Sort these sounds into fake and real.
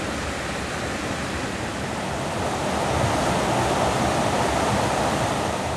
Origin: real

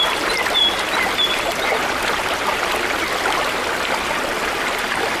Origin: real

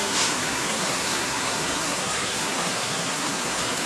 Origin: fake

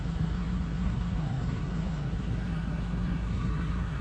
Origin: fake